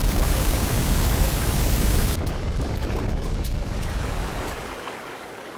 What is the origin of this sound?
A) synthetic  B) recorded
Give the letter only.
A